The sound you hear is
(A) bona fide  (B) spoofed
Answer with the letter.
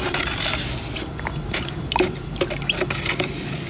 A